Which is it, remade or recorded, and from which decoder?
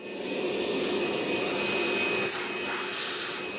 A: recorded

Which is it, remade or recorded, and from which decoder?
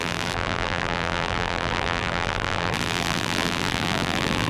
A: remade, vocoder, BigVGAN v2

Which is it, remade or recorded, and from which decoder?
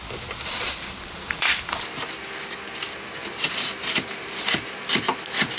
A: recorded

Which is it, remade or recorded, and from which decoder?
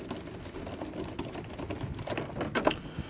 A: recorded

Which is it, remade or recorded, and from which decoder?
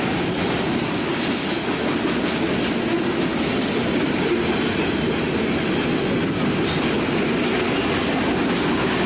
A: recorded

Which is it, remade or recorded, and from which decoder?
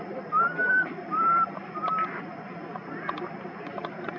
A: recorded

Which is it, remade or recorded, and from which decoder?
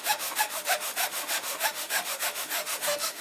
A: remade, autoencoder, DAC-VAE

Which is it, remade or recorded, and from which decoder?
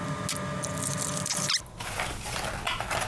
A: recorded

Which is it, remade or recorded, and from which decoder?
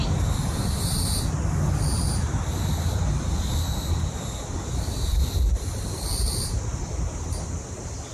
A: recorded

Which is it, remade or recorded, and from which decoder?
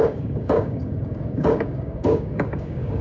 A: remade, codec, DAC